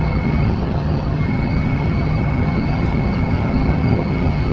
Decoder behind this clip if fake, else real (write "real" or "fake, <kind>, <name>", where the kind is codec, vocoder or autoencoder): fake, vocoder, HiFi-GAN